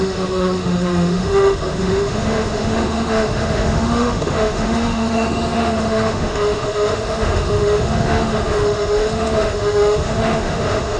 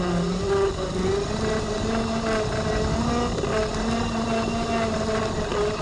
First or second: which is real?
second